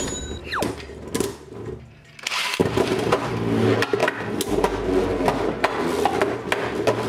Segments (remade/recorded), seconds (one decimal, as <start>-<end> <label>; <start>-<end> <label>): 0.0-0.4 recorded; 0.4-1.1 remade; 1.1-2.6 recorded; 2.6-3.3 remade; 3.3-7.1 recorded